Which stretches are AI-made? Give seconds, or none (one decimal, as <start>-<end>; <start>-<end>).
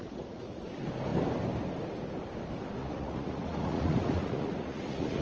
0.0-0.6; 2.8-5.2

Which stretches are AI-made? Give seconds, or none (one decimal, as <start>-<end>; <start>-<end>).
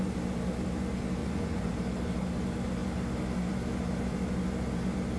1.2-1.7